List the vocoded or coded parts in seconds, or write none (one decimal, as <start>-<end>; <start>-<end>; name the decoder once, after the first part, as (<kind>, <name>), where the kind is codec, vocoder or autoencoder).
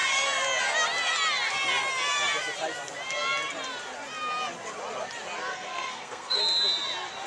5.5-6.4 (codec, SNAC)